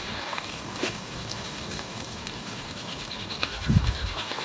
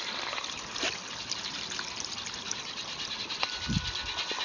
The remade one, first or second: first